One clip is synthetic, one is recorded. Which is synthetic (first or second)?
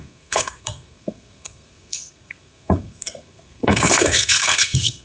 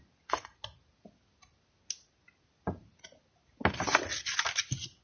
first